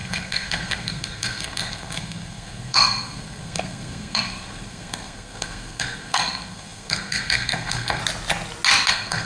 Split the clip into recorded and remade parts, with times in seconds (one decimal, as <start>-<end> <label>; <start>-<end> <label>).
0.0-8.0 remade; 8.0-8.9 recorded; 8.9-9.3 remade